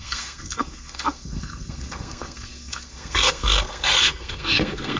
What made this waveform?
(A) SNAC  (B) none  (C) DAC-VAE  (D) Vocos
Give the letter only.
A